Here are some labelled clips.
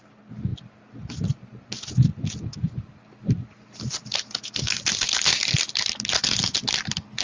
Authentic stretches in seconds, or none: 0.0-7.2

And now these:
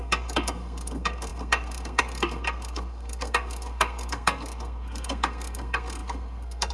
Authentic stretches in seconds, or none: none

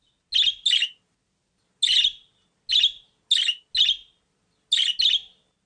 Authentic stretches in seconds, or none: 0.0-5.7

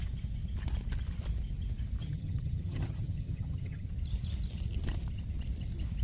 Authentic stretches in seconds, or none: 0.0-2.0; 3.9-6.0